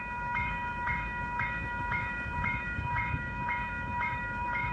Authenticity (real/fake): fake